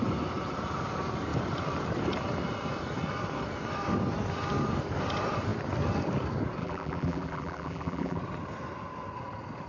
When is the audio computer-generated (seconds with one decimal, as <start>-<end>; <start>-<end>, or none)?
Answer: 6.6-8.2